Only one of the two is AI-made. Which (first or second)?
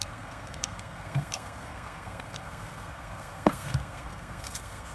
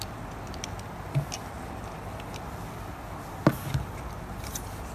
first